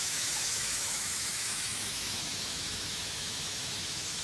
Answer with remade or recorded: remade